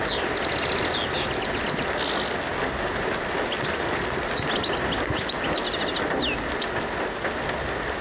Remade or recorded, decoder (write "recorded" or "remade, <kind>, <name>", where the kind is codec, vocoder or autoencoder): recorded